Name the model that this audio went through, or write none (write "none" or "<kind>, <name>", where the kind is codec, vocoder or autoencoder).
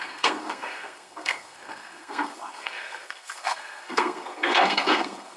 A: codec, SNAC